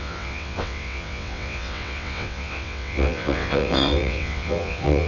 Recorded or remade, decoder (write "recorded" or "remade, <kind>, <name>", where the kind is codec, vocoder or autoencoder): remade, vocoder, WaveNeXt